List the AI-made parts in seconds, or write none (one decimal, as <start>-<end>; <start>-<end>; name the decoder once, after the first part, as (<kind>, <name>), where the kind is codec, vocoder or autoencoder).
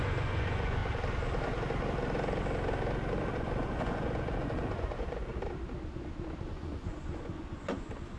0.0-0.8 (vocoder, Vocos); 3.3-5.3; 6.5-8.2